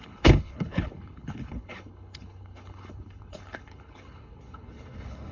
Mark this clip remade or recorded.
remade